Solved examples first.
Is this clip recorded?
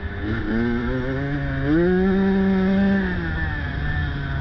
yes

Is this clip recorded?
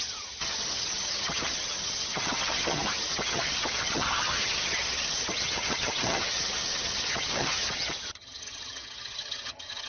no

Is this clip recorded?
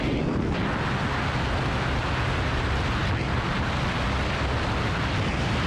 yes